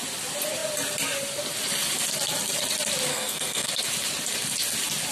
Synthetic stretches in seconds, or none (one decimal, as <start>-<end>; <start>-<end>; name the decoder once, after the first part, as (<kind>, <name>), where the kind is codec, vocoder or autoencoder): 3.1-3.7 (codec, SNAC)